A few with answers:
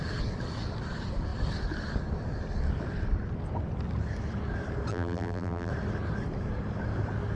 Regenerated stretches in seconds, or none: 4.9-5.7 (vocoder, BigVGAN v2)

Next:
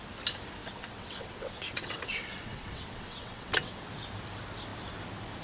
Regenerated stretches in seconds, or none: 0.6-3.8 (vocoder, WaveNeXt)

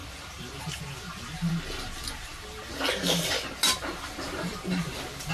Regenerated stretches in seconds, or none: none

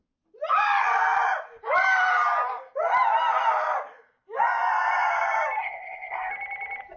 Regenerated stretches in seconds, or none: 5.6-6.3 (codec, SNAC)

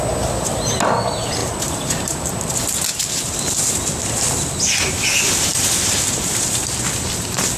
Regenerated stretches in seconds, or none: 1.4-2.6 (vocoder, BigVGAN v2); 5.5-6.6

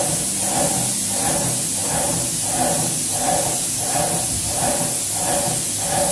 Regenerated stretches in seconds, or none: none